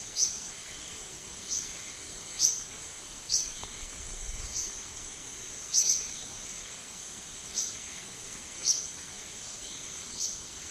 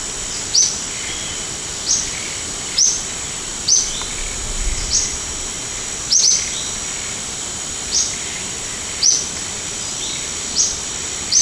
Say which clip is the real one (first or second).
second